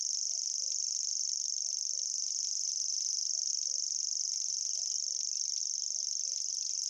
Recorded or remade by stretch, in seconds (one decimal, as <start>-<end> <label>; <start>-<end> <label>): 0.0-6.9 recorded